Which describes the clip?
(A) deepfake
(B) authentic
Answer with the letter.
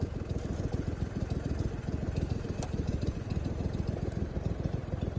B